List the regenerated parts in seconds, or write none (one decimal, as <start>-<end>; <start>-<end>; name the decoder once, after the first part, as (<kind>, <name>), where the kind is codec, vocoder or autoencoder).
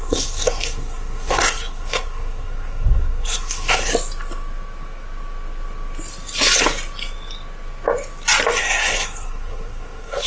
0.0-3.9 (codec, SNAC); 8.6-10.3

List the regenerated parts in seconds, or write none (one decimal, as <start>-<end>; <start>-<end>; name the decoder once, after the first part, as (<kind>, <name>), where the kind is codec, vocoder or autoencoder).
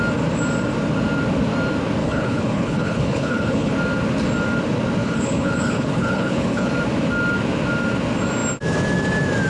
2.0-3.7 (codec, HILCodec); 5.0-6.7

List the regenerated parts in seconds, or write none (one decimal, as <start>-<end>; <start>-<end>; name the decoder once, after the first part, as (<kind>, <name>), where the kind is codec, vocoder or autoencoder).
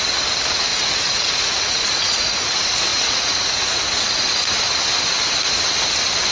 0.7-2.5 (vocoder, Vocos); 2.9-3.8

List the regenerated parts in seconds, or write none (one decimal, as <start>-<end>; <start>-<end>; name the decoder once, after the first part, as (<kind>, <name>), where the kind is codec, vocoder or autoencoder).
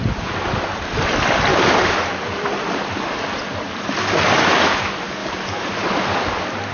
1.5-2.8 (vocoder, BigVGAN v2); 5.2-6.0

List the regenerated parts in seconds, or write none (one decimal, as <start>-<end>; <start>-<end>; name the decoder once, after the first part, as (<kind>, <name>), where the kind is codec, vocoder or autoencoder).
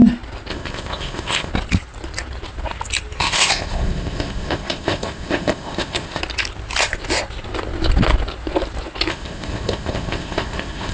0.5-1.5 (codec, ZipCodec); 3.2-6.2; 9.1-10.9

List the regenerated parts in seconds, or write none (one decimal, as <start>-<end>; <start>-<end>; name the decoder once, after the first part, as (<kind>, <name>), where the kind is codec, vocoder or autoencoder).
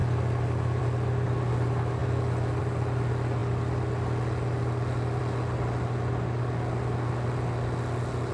none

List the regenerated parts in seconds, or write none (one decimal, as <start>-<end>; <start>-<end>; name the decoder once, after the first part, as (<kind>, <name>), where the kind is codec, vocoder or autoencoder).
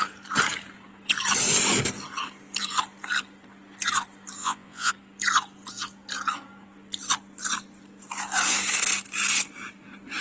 4.4-4.9 (vocoder, Vocos)